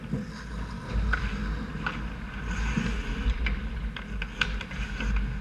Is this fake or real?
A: real